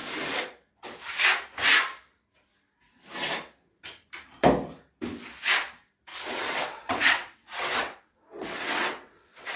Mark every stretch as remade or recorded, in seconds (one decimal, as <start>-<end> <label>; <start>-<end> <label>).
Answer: 0.0-6.1 recorded; 6.1-9.6 remade